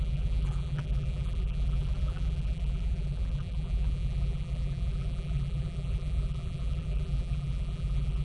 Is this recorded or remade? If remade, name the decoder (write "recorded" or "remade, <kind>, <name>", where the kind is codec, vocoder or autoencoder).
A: remade, vocoder, BigVGAN v2